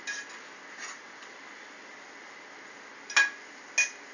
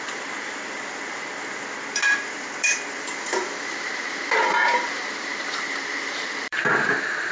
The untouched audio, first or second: first